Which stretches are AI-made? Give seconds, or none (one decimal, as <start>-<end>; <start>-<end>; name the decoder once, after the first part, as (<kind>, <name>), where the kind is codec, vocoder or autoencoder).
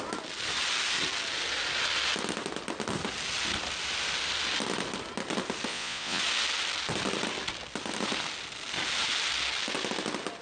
5.7-6.2 (vocoder, Vocos)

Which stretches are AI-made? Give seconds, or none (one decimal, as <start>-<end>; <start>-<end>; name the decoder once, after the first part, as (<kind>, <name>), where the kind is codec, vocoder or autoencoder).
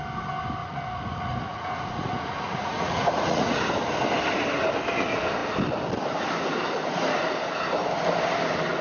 0.6-3.6 (vocoder, Vocos)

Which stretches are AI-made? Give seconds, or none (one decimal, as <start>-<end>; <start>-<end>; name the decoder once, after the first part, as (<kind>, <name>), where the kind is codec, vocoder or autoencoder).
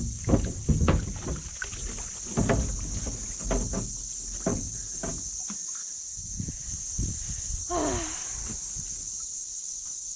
4.5-5.1 (vocoder, Vocos); 5.8-6.6